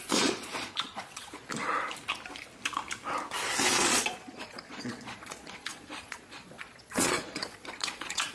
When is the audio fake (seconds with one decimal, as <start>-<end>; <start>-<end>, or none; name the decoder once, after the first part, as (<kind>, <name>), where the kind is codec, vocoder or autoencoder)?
0.0-1.5 (vocoder, Vocos); 3.7-8.3